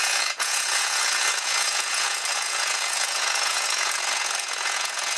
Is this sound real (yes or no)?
no